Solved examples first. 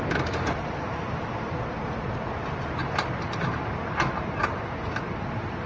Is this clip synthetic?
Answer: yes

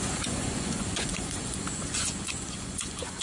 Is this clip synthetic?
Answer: yes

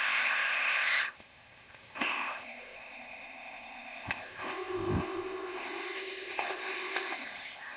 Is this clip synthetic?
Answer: yes